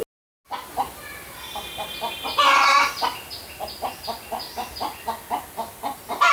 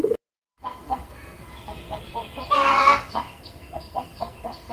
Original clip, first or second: first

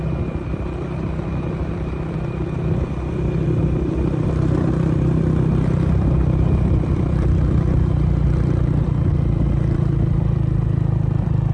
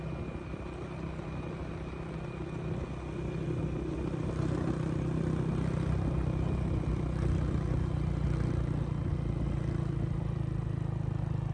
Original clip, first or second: second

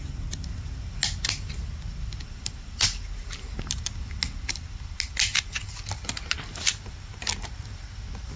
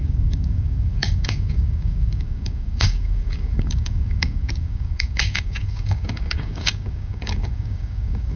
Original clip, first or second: first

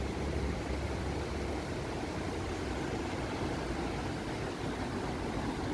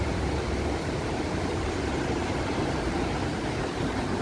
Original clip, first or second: first